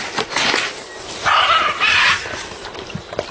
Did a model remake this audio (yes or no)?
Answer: no